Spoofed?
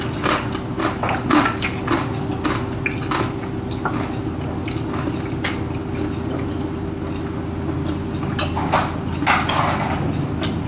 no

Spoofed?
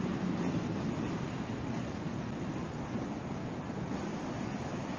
no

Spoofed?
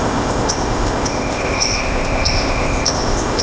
yes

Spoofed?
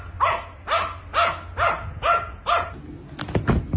no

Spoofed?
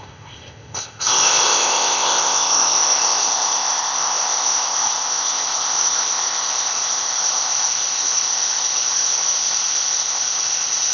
yes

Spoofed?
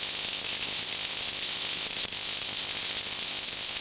yes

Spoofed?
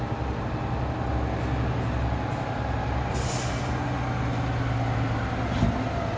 no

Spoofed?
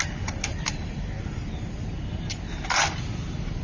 no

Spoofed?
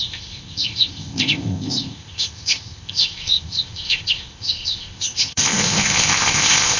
yes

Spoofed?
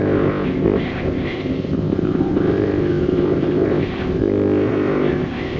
yes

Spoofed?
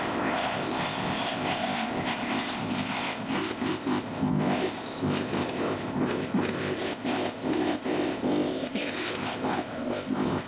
yes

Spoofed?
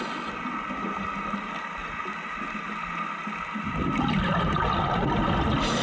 no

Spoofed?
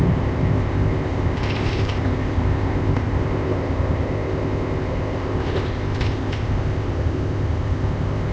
yes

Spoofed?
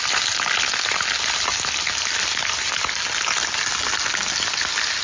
no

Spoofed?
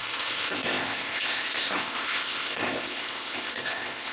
yes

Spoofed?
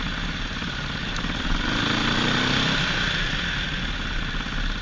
no